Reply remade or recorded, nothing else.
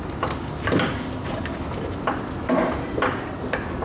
recorded